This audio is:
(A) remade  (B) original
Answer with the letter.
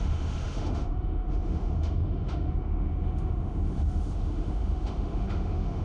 A